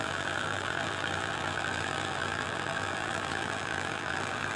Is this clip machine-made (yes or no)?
yes